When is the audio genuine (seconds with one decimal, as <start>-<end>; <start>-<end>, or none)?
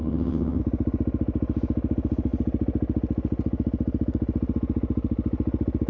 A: 0.6-5.9